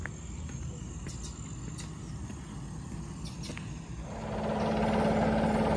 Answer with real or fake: real